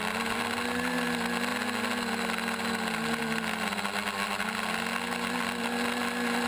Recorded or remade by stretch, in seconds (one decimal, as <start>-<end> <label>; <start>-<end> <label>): 0.0-6.5 recorded